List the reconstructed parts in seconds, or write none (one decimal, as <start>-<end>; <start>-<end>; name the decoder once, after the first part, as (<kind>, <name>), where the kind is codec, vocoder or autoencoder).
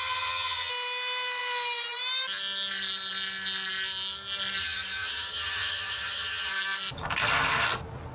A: 0.0-0.7 (vocoder, HiFi-GAN); 4.6-6.5